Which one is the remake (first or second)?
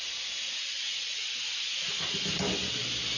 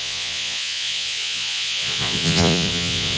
second